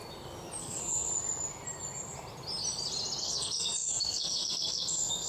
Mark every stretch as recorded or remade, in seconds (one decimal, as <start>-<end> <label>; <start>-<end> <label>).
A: 0.0-0.6 recorded; 0.6-1.1 remade; 1.1-3.2 recorded; 3.2-5.3 remade